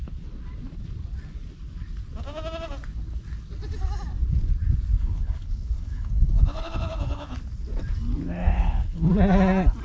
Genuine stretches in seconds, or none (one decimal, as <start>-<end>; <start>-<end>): 0.0-4.9; 7.4-8.5; 9.1-9.8